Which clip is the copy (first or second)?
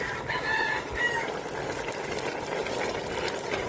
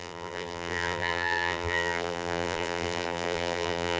second